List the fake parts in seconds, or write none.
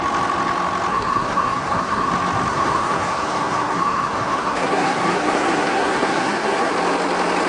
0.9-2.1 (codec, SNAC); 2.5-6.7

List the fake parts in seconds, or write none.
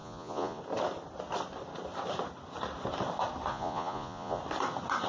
0.0-0.6 (vocoder, Vocos); 3.5-4.4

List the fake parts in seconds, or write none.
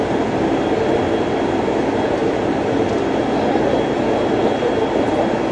none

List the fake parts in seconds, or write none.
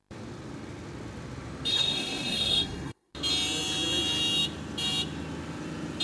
1.7-3.1 (codec, SNAC)